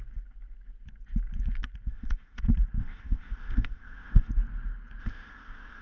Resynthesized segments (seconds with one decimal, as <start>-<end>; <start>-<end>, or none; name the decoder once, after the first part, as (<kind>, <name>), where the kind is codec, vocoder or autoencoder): 1.9-2.4 (codec, ZipCodec); 2.8-4.3; 5.0-5.8